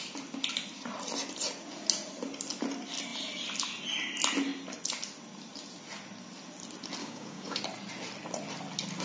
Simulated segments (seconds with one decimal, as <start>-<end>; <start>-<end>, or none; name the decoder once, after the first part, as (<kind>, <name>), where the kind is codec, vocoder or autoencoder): 7.0-7.6 (codec, DAC)